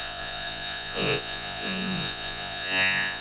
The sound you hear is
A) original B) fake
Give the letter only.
B